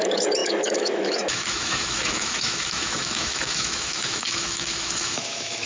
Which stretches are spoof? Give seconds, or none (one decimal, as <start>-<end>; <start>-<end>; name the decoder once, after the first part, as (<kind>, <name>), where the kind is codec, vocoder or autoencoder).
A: 0.0-5.7 (autoencoder, DAC-VAE)